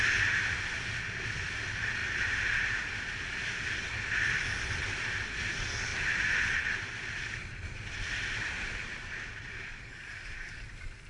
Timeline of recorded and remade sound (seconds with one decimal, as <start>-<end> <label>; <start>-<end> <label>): 0.0-11.1 recorded